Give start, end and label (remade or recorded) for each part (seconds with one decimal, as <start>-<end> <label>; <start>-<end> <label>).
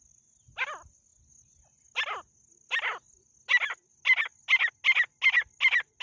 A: 0.0-6.0 recorded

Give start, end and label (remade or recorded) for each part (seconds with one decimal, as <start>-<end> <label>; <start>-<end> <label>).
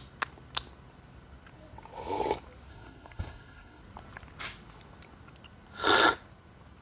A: 0.0-2.7 recorded; 2.7-3.8 remade; 3.8-6.8 recorded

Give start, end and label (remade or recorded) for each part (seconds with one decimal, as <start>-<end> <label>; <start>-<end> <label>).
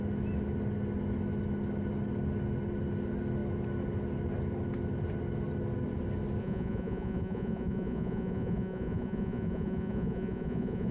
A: 0.0-6.4 recorded; 6.4-10.9 remade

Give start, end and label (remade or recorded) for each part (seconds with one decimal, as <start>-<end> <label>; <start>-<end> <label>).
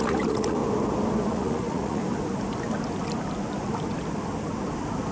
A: 0.0-0.6 remade; 0.6-1.3 recorded; 1.3-2.0 remade; 2.0-5.1 recorded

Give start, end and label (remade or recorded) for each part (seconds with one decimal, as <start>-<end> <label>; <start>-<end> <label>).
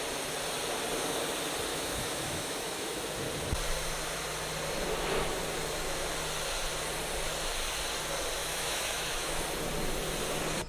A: 0.0-1.7 recorded; 1.7-3.0 remade; 3.0-8.4 recorded; 8.4-9.4 remade; 9.4-10.7 recorded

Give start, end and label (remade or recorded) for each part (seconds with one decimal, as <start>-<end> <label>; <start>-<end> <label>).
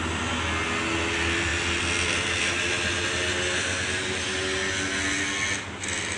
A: 0.0-6.2 recorded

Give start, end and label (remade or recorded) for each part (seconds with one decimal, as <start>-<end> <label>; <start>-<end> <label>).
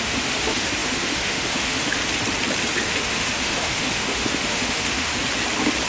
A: 0.0-2.0 remade; 2.0-2.7 recorded; 2.7-5.1 remade; 5.1-5.9 recorded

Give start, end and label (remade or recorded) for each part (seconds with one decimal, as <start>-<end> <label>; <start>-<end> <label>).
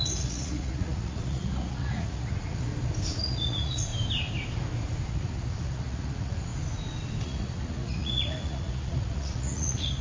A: 0.0-2.7 remade; 2.7-3.2 recorded; 3.2-3.9 remade; 3.9-5.1 recorded; 5.1-6.5 remade; 6.5-7.2 recorded; 7.2-10.0 remade